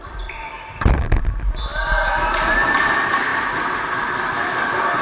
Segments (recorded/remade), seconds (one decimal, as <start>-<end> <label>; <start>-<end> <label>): 0.0-5.0 recorded